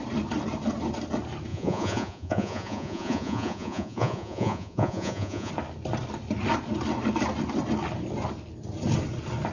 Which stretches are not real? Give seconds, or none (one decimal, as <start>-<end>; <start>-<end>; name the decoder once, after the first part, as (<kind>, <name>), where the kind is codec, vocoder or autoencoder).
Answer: 1.5-5.5 (vocoder, Vocos)